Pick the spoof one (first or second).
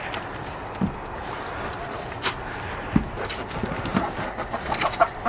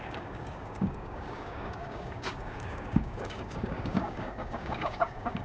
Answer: second